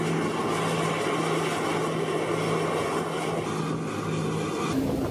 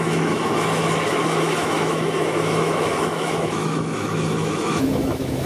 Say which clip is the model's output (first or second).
second